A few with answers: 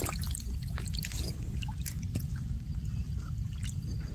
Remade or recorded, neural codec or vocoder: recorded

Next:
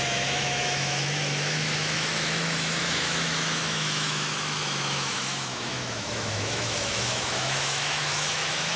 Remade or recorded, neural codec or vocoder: remade, autoencoder, DAC-VAE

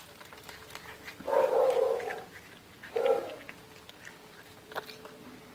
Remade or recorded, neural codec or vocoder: recorded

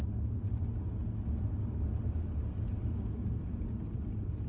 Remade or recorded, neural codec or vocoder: recorded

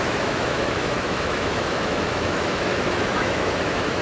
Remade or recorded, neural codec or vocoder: remade, autoencoder, DAC-VAE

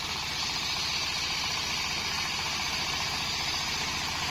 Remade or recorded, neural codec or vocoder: recorded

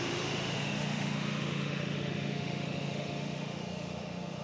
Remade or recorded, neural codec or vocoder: remade, autoencoder, DAC-VAE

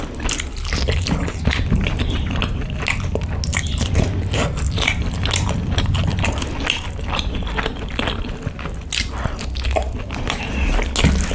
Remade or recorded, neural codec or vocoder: recorded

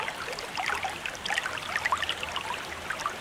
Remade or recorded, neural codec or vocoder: recorded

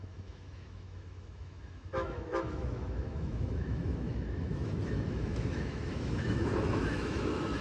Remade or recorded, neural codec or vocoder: remade, autoencoder, DAC-VAE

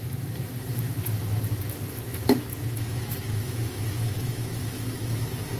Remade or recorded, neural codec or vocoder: remade, autoencoder, DAC-VAE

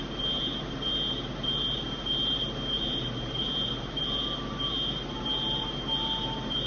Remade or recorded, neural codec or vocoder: recorded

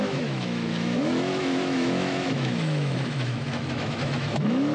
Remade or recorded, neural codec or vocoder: remade, autoencoder, DAC-VAE